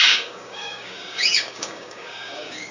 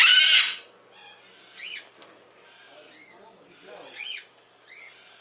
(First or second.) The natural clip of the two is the second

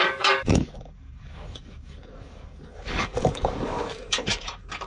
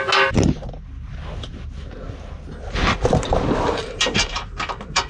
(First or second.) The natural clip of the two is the second